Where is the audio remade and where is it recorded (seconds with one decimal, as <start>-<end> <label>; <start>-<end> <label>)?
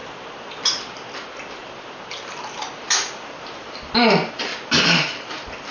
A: 0.0-5.7 recorded